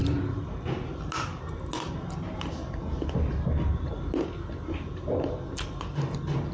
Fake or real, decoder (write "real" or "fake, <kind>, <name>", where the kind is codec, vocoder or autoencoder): real